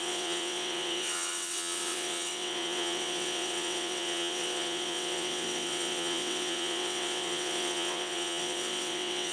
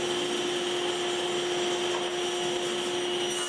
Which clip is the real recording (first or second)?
second